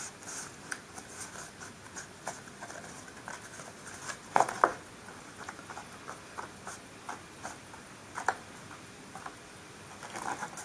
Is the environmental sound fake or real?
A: real